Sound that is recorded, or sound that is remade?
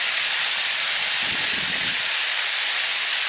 recorded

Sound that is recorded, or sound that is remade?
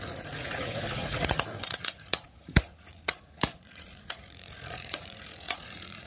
remade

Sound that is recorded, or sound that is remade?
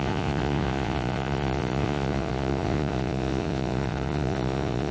remade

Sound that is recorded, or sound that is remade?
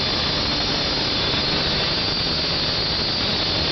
recorded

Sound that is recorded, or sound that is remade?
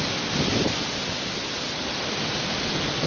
recorded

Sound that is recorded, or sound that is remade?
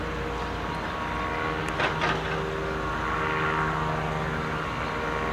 recorded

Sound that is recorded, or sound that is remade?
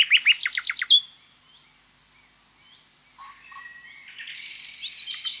recorded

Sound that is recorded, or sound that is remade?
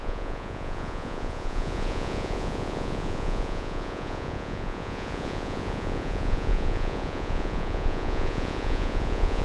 remade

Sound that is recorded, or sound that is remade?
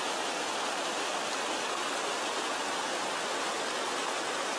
recorded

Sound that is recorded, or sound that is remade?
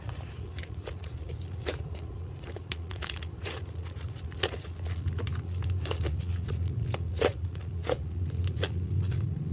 remade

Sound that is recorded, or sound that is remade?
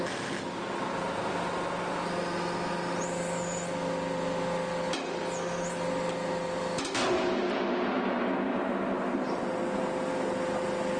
recorded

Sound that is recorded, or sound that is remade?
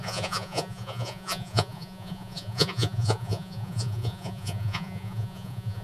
remade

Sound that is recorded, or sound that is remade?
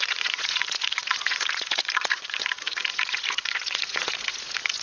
remade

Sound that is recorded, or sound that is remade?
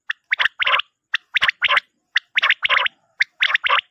recorded